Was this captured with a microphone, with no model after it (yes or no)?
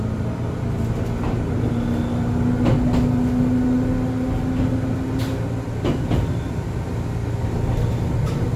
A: yes